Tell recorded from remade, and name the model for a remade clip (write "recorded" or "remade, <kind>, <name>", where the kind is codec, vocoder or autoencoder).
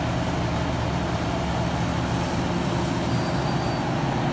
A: recorded